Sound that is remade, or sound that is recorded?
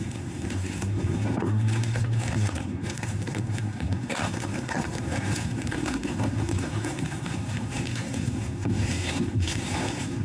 remade